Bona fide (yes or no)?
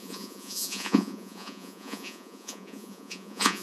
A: no